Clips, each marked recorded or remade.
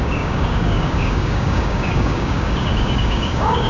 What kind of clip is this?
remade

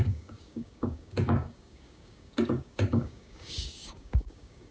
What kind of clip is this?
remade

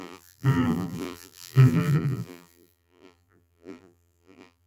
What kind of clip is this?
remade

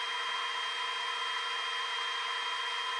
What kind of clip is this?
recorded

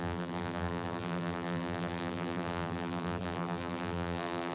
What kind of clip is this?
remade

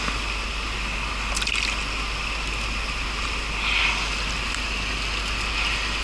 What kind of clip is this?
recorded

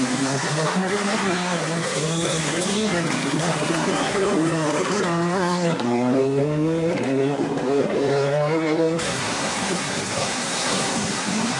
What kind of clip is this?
remade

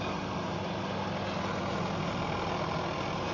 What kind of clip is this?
recorded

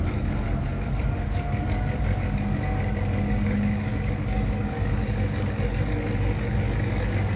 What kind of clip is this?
remade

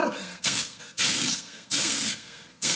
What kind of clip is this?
remade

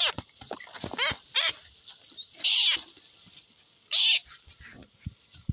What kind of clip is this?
recorded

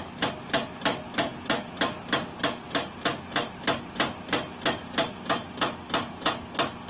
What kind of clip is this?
recorded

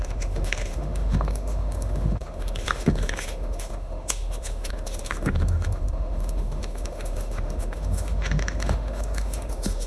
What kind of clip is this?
remade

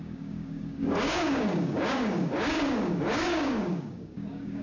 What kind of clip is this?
remade